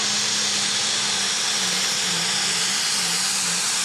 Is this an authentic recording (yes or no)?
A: yes